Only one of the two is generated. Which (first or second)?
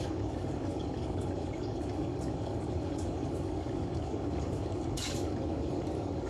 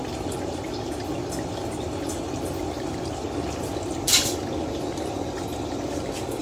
first